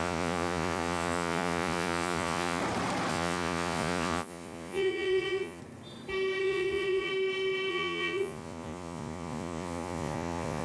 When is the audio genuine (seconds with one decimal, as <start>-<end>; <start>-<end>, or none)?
2.6-3.1; 5.6-6.4; 7.1-7.7